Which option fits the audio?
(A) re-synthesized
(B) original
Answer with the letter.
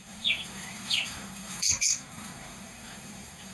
A